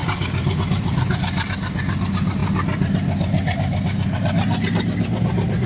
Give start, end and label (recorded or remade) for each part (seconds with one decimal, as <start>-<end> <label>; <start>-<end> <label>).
0.0-5.7 recorded

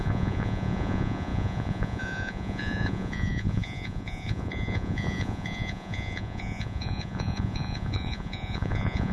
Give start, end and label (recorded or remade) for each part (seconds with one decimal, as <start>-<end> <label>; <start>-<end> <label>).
0.0-9.1 remade

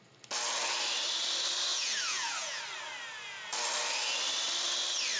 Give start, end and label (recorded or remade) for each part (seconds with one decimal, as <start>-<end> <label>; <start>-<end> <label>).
0.0-1.7 recorded; 1.7-2.6 remade; 2.6-5.2 recorded

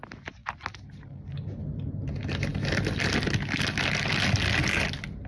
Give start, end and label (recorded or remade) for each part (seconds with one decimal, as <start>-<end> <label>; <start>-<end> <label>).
0.0-5.3 recorded

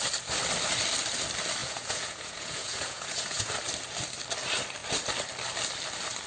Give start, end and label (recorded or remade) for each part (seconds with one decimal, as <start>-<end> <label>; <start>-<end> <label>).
0.0-1.6 recorded; 1.6-3.5 remade; 3.5-6.3 recorded

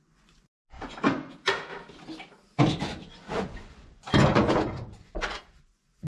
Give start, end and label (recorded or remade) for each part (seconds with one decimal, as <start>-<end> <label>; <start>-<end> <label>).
0.0-1.7 remade; 1.7-2.6 recorded; 2.6-6.1 remade

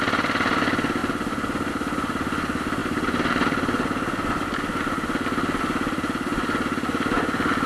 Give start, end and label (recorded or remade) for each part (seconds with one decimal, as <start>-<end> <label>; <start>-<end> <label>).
0.0-7.7 recorded

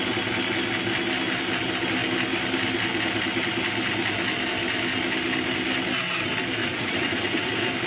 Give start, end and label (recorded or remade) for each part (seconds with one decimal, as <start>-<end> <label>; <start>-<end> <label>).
0.0-6.6 recorded; 6.6-7.5 remade; 7.5-7.9 recorded